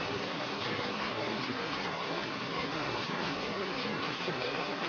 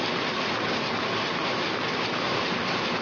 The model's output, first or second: first